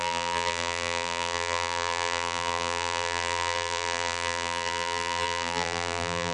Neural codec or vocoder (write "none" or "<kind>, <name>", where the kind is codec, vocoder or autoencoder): vocoder, BigVGAN v2